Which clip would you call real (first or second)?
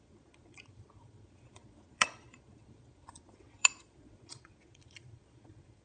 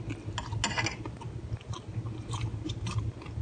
second